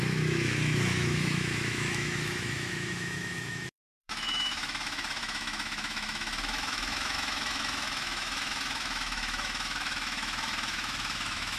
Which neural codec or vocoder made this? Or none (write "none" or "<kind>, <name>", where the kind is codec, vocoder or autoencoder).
autoencoder, DAC-VAE